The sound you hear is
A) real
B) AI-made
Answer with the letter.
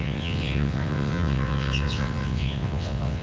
B